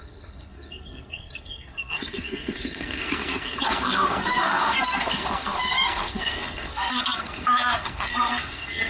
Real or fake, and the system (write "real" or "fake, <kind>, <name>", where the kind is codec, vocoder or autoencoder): fake, codec, SNAC